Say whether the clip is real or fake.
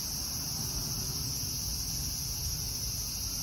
real